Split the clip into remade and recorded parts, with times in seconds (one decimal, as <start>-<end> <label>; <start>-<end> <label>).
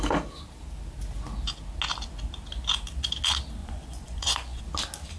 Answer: 0.0-3.6 recorded; 3.6-4.6 remade; 4.6-5.2 recorded